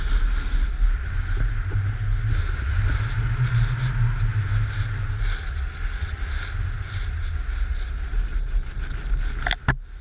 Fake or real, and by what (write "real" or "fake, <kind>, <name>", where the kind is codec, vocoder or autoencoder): real